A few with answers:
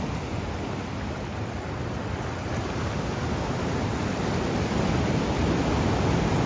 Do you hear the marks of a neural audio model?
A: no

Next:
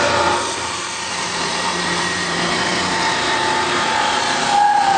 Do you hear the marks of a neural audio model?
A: yes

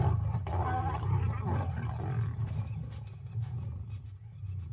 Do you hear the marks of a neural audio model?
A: no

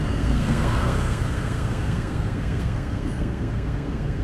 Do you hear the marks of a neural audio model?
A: yes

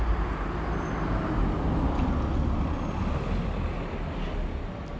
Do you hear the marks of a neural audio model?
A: no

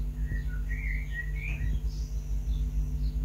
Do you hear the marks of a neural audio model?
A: no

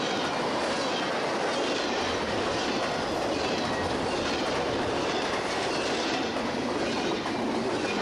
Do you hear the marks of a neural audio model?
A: no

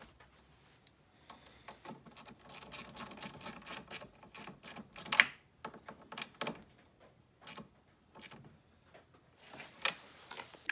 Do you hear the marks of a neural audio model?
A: no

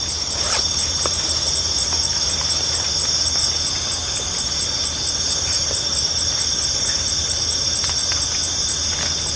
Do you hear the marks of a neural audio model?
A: no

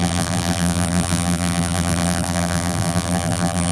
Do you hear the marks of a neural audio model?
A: yes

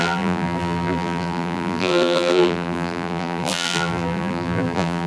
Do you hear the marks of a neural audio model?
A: yes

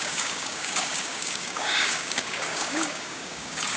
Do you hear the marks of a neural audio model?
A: yes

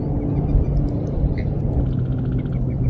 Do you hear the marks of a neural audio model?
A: no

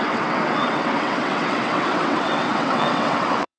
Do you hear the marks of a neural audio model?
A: yes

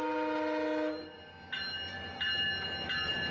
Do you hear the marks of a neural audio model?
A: no